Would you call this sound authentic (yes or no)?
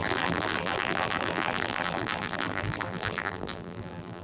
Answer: no